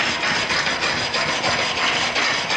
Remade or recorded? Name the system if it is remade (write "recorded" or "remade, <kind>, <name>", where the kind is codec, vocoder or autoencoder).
recorded